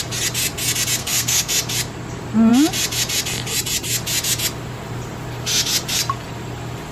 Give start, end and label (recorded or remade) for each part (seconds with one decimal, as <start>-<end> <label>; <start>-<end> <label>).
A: 0.0-1.0 recorded; 1.0-1.5 remade; 1.5-6.9 recorded